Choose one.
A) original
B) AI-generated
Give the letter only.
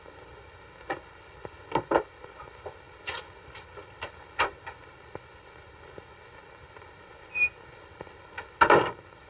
A